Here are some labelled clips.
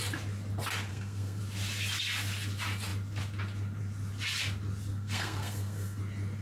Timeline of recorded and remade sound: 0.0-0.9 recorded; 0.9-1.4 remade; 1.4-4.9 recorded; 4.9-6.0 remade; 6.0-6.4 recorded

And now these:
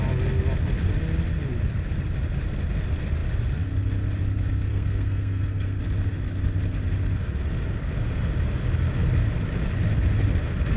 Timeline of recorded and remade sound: 0.0-4.7 recorded; 4.7-5.8 remade; 5.8-10.8 recorded

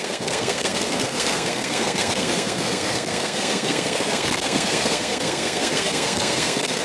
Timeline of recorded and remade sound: 0.0-6.8 remade

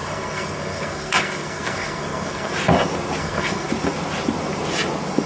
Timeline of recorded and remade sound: 0.0-2.5 remade; 2.5-3.2 recorded; 3.2-3.7 remade; 3.7-5.3 recorded

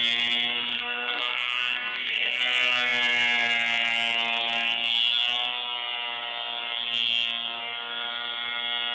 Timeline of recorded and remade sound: 0.0-0.7 recorded; 0.7-2.4 remade; 2.4-8.9 recorded

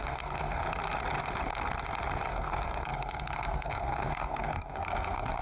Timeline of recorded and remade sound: 0.0-0.6 remade; 0.6-2.3 recorded; 2.3-5.4 remade

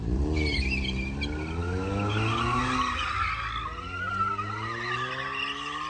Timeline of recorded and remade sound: 0.0-5.9 recorded